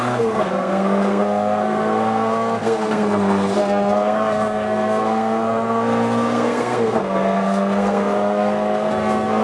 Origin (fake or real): fake